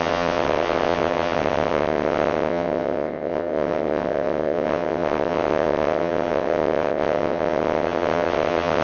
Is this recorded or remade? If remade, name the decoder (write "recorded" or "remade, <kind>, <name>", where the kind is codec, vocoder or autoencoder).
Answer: remade, vocoder, WaveNeXt